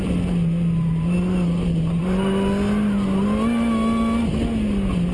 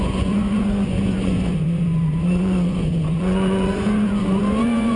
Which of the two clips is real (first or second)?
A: first